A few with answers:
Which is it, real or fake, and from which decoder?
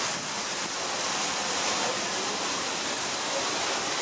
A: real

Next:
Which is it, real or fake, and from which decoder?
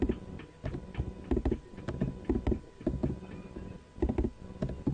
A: real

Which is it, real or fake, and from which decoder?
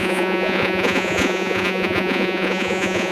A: fake, vocoder, Vocos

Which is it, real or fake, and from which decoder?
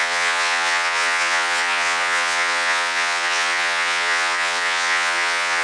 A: fake, vocoder, Vocos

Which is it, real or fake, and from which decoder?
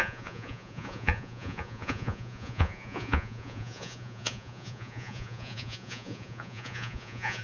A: fake, vocoder, Vocos